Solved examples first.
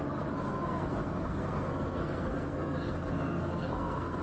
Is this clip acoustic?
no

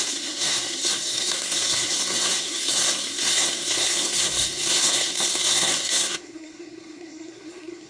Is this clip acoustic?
no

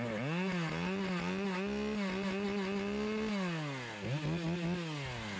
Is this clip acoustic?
yes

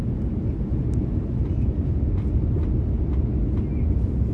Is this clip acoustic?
yes